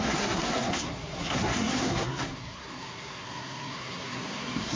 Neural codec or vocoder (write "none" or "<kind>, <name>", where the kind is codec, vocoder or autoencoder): codec, SNAC